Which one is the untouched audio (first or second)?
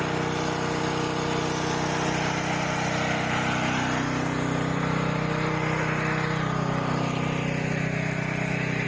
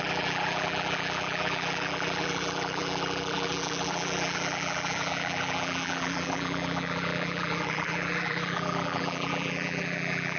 first